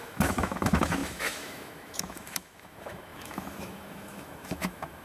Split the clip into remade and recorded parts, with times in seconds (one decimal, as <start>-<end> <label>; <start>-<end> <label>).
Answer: 0.0-5.0 remade